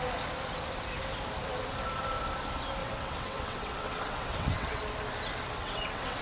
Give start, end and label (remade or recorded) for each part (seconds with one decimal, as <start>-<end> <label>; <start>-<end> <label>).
0.0-2.8 recorded; 2.8-4.8 remade; 4.8-5.6 recorded; 5.6-6.2 remade